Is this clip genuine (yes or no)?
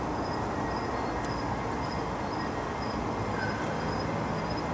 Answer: yes